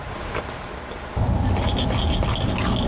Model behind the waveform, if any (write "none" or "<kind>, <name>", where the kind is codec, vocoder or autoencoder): none